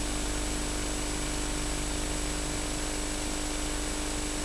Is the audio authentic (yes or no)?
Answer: yes